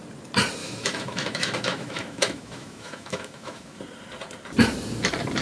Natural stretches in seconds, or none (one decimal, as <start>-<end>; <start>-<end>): 0.0-0.6; 3.8-5.4